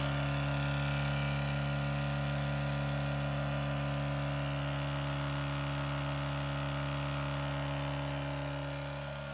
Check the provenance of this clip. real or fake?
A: real